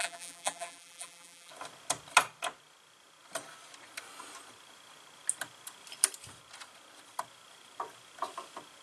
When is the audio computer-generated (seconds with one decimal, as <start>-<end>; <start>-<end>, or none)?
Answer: 0.0-1.5